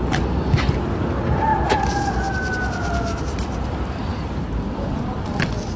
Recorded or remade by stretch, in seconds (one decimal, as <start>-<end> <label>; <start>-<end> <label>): 0.0-1.5 remade; 1.5-3.2 recorded; 3.2-5.8 remade

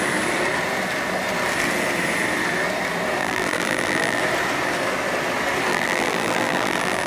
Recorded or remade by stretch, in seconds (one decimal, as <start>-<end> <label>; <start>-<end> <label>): 0.0-3.2 recorded; 3.2-4.2 remade; 4.2-5.7 recorded; 5.7-7.1 remade

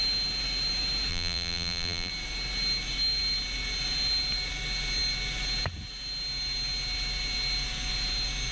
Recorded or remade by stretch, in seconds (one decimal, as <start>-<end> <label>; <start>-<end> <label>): 0.0-1.1 recorded; 1.1-2.1 remade; 2.1-8.5 recorded